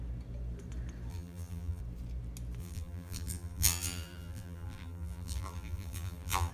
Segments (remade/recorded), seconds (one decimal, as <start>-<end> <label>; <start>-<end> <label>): 0.0-1.1 recorded; 1.1-1.8 remade; 1.8-2.6 recorded; 2.6-6.5 remade